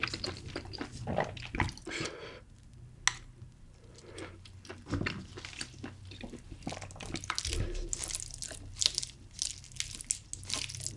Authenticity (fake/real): real